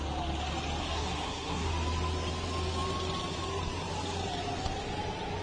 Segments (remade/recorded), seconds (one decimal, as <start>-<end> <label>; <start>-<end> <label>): 0.0-0.8 recorded; 0.8-1.7 remade; 1.7-5.4 recorded